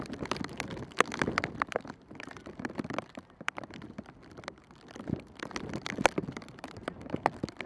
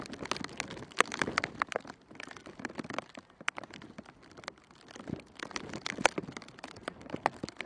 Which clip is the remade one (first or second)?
first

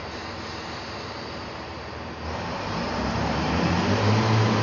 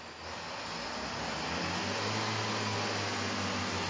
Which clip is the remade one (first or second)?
first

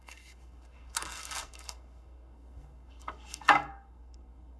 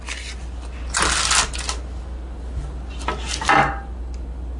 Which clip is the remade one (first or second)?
first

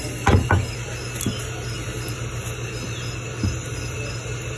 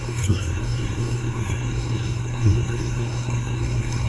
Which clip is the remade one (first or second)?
second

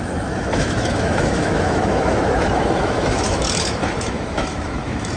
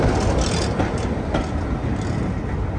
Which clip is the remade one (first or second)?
first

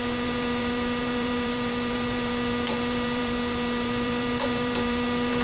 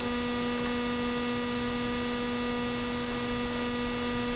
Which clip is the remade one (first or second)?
first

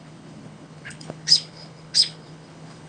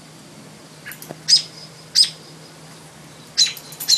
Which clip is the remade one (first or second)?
first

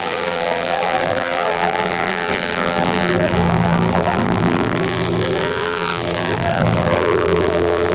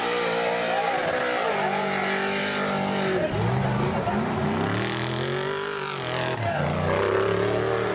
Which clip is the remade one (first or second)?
first